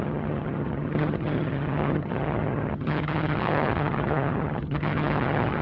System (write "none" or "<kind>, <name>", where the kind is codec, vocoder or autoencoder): vocoder, HiFi-GAN